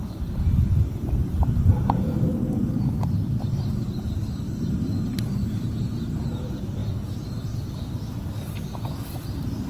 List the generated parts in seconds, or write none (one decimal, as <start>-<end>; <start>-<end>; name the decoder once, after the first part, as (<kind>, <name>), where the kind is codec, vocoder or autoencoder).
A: 0.0-1.7 (vocoder, BigVGAN v2); 6.3-6.8; 7.4-9.7